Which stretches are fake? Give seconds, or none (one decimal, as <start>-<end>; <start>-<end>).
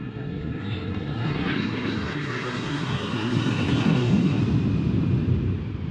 0.0-4.4